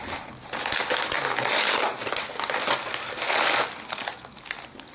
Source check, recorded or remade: recorded